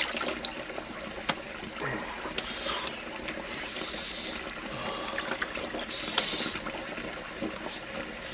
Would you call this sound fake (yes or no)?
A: no